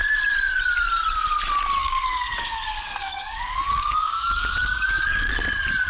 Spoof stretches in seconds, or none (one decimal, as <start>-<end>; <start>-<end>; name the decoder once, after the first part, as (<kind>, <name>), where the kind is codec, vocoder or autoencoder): 1.8-5.3 (codec, DAC)